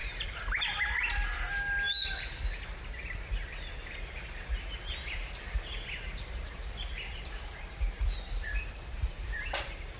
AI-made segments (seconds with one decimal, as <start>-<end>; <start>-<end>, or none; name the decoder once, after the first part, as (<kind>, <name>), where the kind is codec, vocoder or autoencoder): none